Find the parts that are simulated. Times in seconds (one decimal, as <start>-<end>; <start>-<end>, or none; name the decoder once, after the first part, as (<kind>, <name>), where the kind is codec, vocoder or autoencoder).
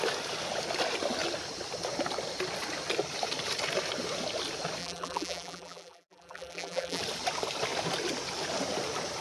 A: 4.8-7.0 (vocoder, BigVGAN v2)